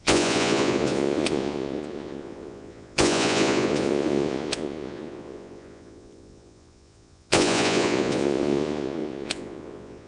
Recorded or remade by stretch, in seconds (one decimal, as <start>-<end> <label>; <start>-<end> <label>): 0.0-10.1 remade